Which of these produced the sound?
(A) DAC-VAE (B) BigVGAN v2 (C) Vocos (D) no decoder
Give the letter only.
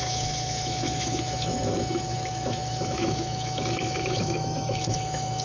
A